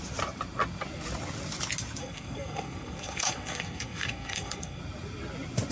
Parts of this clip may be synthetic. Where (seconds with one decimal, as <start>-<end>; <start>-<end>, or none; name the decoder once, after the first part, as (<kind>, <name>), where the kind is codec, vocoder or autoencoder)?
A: 2.0-4.8 (codec, SNAC)